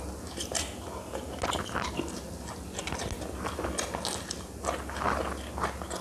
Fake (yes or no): no